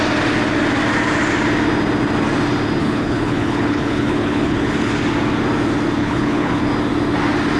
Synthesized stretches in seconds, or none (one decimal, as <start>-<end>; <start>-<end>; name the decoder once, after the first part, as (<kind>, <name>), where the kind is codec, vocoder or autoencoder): 2.8-4.9 (codec, HILCodec); 6.0-6.7